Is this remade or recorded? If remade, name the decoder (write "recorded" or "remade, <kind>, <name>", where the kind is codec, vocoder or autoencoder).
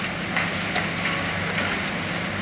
recorded